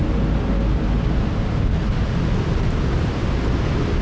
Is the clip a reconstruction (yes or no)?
no